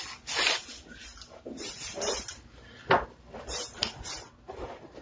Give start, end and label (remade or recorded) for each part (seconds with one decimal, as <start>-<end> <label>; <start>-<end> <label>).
0.0-5.0 recorded